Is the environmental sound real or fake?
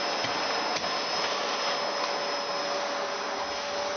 real